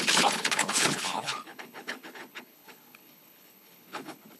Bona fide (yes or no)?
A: no